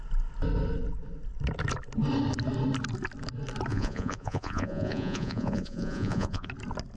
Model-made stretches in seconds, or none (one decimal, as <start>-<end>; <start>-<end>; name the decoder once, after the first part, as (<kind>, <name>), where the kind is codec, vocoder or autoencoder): 3.7-6.5 (vocoder, Vocos)